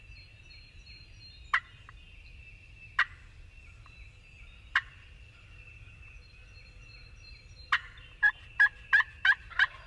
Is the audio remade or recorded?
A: remade